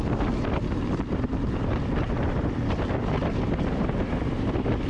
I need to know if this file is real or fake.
real